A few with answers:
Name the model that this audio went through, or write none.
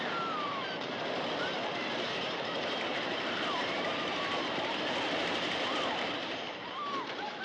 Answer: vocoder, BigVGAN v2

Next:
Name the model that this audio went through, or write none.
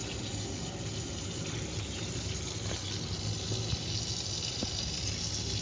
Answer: none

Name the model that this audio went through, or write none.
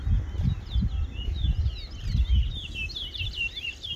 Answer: none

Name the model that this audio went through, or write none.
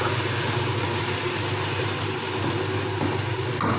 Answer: none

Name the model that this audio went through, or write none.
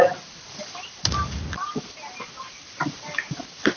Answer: vocoder, BigVGAN v2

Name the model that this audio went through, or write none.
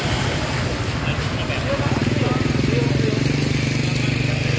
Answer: none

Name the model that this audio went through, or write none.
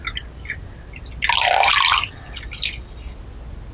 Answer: none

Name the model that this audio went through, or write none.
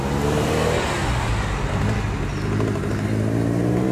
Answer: none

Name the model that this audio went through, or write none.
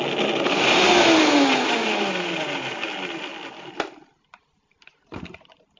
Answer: none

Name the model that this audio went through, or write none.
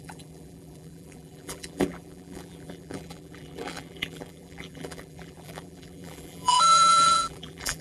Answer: vocoder, BigVGAN v2